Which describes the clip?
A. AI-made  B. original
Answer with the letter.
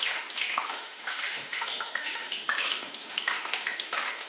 A